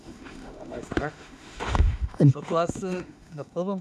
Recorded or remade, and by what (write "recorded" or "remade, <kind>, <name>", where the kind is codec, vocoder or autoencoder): remade, autoencoder, DAC-VAE